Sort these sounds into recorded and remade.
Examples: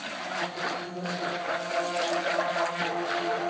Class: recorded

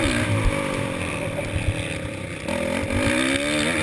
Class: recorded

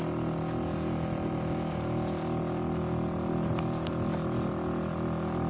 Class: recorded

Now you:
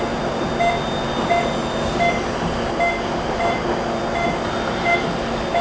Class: recorded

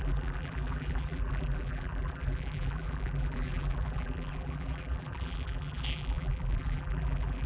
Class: remade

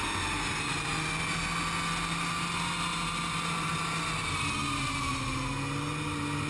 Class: recorded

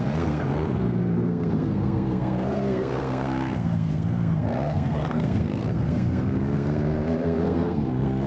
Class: remade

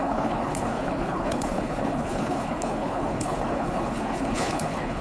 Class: remade